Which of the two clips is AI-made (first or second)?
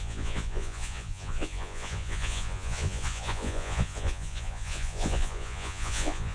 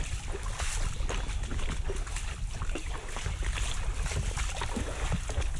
first